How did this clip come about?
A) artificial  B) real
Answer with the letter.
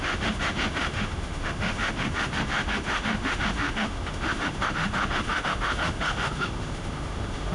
A